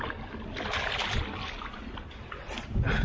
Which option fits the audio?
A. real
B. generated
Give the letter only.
A